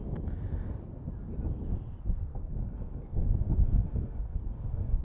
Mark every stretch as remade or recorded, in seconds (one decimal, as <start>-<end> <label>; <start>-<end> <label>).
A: 0.0-2.3 recorded; 2.3-5.0 remade